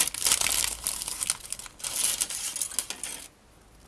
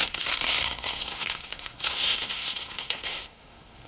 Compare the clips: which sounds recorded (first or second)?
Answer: first